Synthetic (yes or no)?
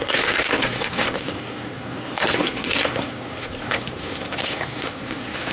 yes